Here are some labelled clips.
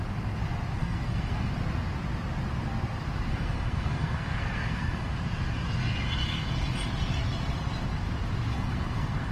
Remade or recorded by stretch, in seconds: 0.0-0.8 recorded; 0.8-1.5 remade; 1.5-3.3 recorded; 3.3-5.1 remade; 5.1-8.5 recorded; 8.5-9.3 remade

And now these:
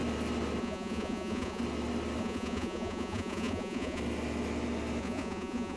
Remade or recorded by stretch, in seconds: 0.0-0.6 recorded; 0.6-1.6 remade; 1.6-2.2 recorded; 2.2-4.0 remade; 4.0-5.0 recorded; 5.0-5.8 remade

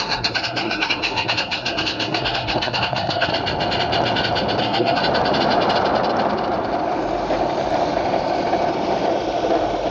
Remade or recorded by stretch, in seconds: 0.0-3.3 remade; 3.3-4.6 recorded; 4.6-5.0 remade; 5.0-9.9 recorded

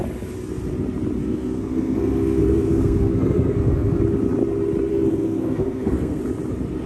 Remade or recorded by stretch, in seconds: 0.0-1.2 recorded; 1.2-4.0 remade; 4.0-4.9 recorded; 4.9-6.2 remade; 6.2-6.9 recorded

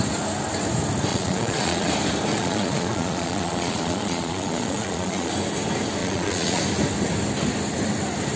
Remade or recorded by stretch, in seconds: 0.0-1.1 recorded; 1.1-1.9 remade; 1.9-2.3 recorded; 2.3-5.3 remade; 5.3-6.0 recorded; 6.0-6.6 remade; 6.6-8.4 recorded